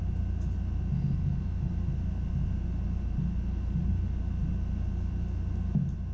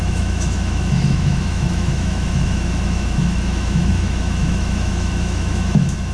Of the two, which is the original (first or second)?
first